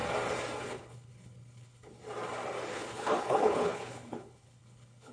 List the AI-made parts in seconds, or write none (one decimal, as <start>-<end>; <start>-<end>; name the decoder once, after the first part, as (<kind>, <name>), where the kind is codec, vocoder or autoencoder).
0.6-1.9 (codec, HILCodec); 2.7-5.1